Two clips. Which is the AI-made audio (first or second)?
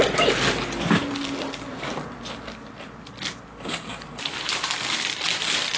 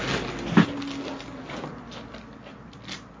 first